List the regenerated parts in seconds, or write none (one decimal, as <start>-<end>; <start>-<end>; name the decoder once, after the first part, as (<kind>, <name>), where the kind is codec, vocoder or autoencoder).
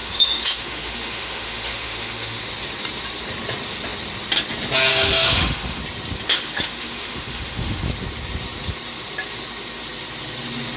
0.0-2.4 (autoencoder, DAC-VAE); 4.9-5.8; 6.3-7.8